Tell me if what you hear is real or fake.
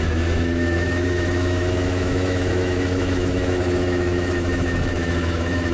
fake